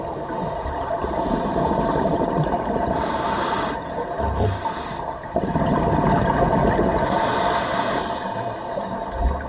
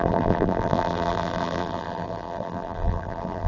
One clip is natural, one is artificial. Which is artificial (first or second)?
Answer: second